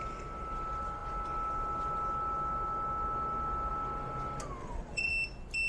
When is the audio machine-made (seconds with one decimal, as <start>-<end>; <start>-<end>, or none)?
4.6-5.1